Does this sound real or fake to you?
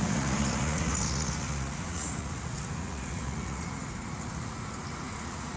fake